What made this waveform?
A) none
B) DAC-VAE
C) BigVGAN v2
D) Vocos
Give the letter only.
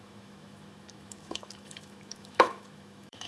B